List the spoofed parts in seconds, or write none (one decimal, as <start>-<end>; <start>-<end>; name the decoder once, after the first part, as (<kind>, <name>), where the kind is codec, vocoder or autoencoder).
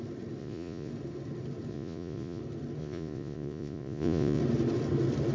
0.4-0.9 (vocoder, Vocos); 1.7-2.4; 2.8-4.4